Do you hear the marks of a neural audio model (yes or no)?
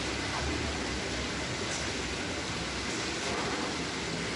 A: no